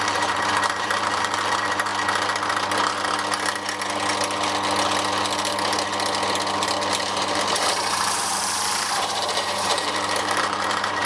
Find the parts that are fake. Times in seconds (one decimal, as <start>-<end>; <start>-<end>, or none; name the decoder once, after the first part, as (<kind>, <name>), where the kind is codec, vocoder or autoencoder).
0.0-1.9 (vocoder, BigVGAN v2); 6.9-11.1